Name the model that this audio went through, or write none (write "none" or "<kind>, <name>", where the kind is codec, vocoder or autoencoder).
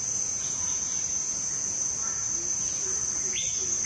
none